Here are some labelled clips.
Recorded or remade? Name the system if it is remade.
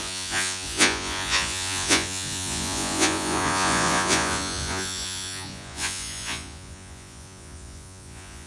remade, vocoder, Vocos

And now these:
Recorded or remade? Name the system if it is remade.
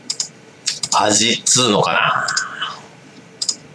remade, vocoder, Vocos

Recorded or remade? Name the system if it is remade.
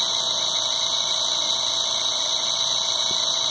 recorded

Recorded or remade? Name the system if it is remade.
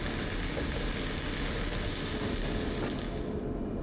recorded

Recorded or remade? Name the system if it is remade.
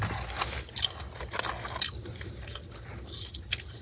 recorded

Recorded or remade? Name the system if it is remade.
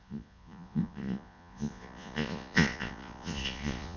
remade, vocoder, Vocos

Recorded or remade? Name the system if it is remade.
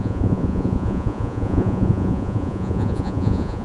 remade, vocoder, Vocos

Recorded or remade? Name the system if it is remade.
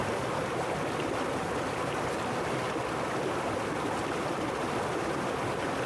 recorded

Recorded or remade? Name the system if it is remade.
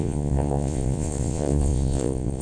remade, vocoder, Vocos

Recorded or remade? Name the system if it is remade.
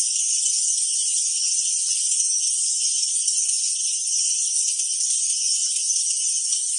recorded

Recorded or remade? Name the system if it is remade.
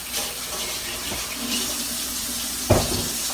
recorded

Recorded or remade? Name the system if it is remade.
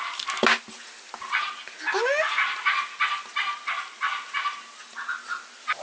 recorded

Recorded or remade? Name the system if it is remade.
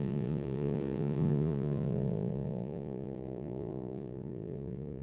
remade, vocoder, Vocos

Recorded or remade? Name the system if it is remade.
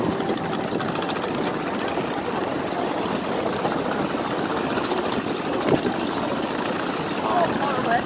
recorded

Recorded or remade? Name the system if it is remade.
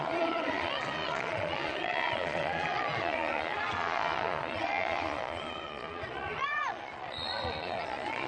remade, vocoder, Vocos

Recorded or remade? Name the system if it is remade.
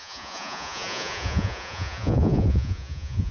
remade, vocoder, Vocos